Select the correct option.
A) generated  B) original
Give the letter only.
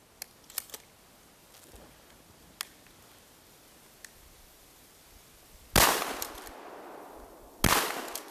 B